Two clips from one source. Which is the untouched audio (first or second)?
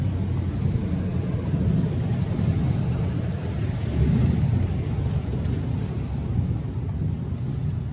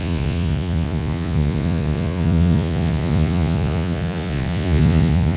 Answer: first